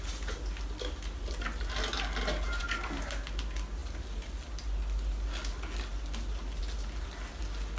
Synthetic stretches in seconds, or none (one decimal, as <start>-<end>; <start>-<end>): none